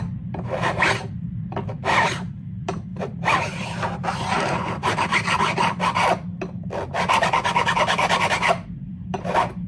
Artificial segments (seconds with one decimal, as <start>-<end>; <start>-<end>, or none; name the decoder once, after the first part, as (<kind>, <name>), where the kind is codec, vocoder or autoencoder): 0.0-5.1 (vocoder, BigVGAN v2); 8.2-9.7